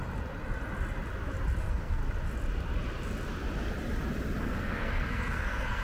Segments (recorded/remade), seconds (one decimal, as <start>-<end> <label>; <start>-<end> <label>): 0.0-1.6 recorded; 1.6-2.0 remade; 2.0-4.4 recorded; 4.4-5.8 remade